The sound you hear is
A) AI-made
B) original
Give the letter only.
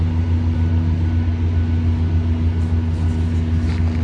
B